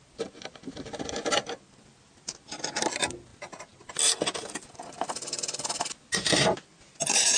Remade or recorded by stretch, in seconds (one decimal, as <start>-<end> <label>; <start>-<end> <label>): 0.0-7.4 recorded